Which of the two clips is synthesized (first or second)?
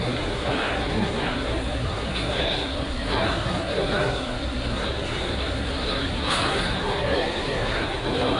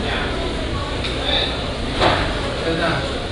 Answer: first